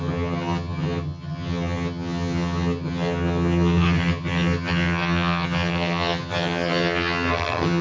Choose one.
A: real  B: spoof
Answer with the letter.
B